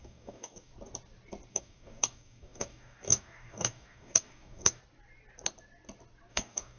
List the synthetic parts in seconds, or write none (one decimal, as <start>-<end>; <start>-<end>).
0.0-0.7; 1.5-4.8; 6.3-6.8